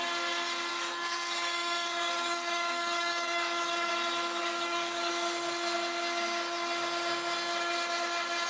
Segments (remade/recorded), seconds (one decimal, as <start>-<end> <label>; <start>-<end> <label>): 0.0-0.7 recorded; 0.7-3.9 remade; 3.9-4.4 recorded; 4.4-5.1 remade; 5.1-8.5 recorded